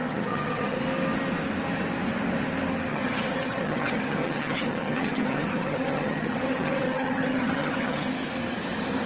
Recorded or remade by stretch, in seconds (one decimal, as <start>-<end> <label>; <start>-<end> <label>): 0.0-0.8 remade; 0.8-2.9 recorded; 2.9-8.1 remade; 8.1-9.1 recorded